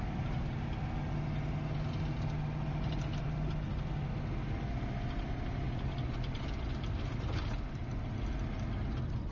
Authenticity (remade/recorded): recorded